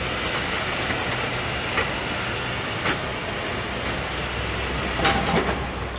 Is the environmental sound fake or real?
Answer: real